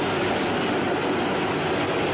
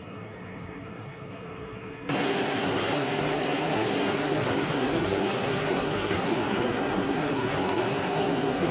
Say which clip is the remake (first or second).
second